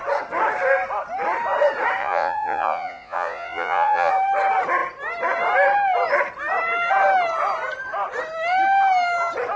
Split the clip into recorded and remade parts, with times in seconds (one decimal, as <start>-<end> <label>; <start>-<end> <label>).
0.0-2.0 recorded; 2.0-4.1 remade; 4.1-9.6 recorded

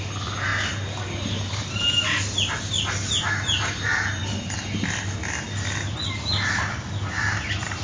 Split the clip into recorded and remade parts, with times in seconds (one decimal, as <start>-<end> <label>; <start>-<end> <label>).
0.0-7.8 recorded